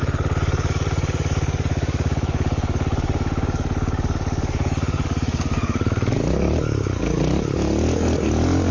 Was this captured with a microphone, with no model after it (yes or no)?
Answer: no